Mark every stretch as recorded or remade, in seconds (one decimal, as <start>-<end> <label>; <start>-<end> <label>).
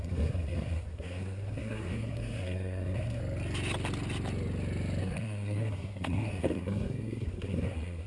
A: 0.0-3.2 remade; 3.2-5.0 recorded; 5.0-8.1 remade